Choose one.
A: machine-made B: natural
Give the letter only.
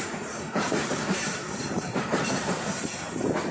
A